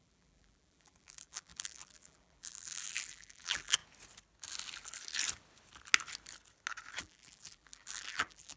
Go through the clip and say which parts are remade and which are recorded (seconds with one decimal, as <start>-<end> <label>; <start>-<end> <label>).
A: 0.0-3.8 remade; 3.8-7.0 recorded; 7.0-8.6 remade

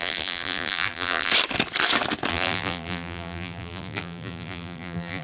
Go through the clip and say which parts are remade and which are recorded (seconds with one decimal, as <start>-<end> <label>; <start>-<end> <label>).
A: 0.0-1.3 remade; 1.3-2.3 recorded; 2.3-5.2 remade

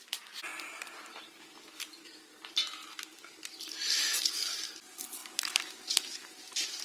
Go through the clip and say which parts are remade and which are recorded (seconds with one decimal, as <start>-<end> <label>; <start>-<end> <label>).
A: 0.0-0.5 recorded; 0.5-1.8 remade; 1.8-6.8 recorded

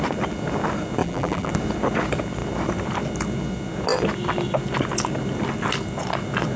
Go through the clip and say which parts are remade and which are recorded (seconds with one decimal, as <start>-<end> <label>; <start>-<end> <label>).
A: 0.0-1.0 recorded; 1.0-1.5 remade; 1.5-6.6 recorded

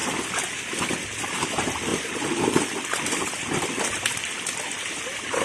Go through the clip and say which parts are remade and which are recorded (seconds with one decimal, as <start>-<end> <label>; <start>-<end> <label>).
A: 0.0-1.9 recorded; 1.9-3.9 remade; 3.9-5.4 recorded

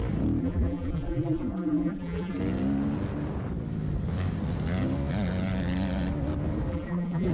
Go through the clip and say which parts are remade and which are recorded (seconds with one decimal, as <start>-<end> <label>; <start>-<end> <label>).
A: 0.0-0.4 recorded; 0.4-2.4 remade; 2.4-6.7 recorded; 6.7-7.3 remade